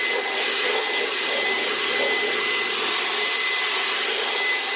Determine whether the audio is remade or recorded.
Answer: recorded